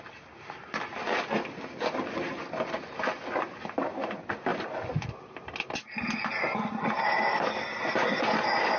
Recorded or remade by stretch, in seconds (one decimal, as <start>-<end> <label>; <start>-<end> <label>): 0.0-8.8 recorded